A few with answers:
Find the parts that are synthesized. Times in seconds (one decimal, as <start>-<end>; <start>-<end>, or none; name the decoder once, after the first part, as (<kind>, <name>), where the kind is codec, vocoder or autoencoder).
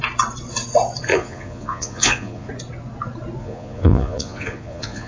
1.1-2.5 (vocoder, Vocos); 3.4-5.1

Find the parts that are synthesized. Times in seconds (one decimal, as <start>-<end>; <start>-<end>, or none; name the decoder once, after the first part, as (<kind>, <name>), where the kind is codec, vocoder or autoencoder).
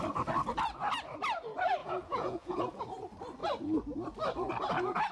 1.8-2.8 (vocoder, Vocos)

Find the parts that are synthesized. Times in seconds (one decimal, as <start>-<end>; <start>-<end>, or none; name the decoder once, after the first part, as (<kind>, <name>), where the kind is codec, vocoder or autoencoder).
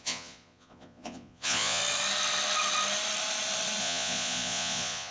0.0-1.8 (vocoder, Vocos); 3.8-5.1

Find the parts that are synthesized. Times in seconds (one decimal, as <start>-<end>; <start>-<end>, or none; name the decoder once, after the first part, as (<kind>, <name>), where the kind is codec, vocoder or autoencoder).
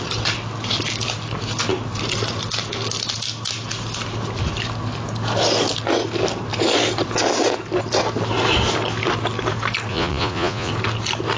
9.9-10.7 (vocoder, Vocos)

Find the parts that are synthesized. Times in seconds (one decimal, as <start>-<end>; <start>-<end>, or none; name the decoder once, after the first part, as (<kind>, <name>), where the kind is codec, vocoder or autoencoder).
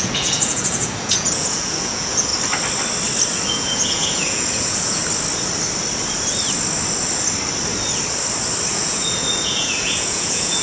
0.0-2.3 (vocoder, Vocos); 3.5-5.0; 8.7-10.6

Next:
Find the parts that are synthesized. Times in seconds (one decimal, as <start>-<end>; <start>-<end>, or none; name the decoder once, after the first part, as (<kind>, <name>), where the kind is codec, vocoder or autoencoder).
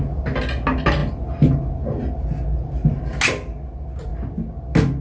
none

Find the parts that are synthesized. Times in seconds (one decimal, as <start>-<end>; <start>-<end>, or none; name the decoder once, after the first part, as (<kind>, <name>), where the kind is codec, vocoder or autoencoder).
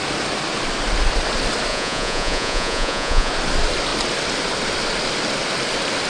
1.7-3.3 (vocoder, Vocos)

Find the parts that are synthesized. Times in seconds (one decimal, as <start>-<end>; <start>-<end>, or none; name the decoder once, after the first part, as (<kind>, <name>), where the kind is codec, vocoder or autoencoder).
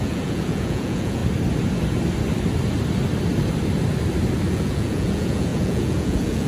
0.0-1.2 (vocoder, Vocos); 4.5-6.5